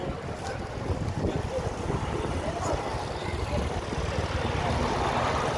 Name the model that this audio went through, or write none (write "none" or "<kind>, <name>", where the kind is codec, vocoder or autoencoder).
none